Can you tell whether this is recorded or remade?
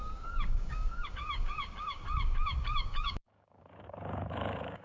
remade